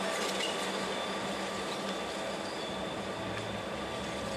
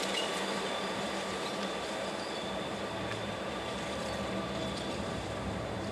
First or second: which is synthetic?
second